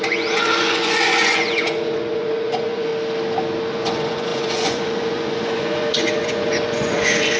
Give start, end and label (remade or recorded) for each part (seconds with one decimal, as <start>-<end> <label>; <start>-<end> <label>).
0.0-2.9 remade; 2.9-3.7 recorded; 3.7-7.4 remade